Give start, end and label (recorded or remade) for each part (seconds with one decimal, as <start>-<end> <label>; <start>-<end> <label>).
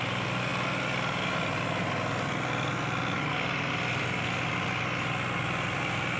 0.0-6.2 recorded